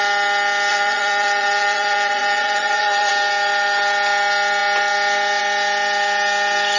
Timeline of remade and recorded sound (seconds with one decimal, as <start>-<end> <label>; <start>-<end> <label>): 0.0-0.7 recorded; 0.7-3.1 remade; 3.1-6.8 recorded